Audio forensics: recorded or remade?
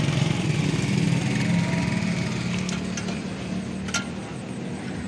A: recorded